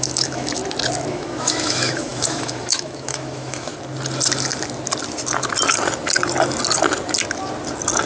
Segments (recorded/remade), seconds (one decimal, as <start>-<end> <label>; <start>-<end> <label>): 0.0-0.6 remade; 0.6-1.1 recorded; 1.1-3.7 remade; 3.7-8.1 recorded